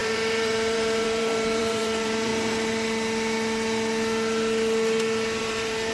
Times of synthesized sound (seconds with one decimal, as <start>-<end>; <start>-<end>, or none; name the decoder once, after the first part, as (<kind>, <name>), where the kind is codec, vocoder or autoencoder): 0.0-2.3 (vocoder, BigVGAN v2); 5.4-5.9